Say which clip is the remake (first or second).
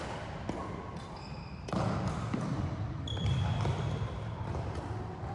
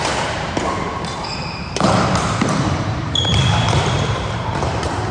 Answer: second